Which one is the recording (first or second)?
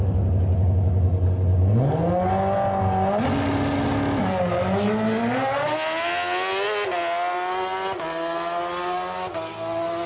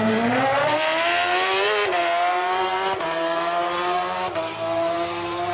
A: first